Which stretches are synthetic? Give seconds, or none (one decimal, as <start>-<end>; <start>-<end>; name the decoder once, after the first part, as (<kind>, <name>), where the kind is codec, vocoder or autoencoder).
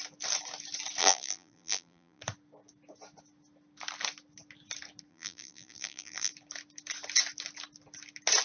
1.0-2.2 (vocoder, BigVGAN v2); 5.1-6.3